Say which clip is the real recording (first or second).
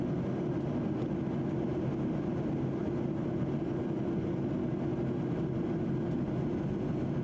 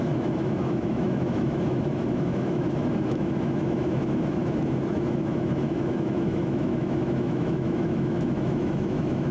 first